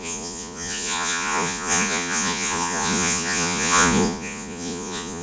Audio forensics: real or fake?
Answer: fake